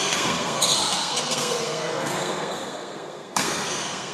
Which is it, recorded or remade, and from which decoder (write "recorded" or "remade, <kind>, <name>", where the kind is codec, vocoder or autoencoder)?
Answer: remade, codec, SNAC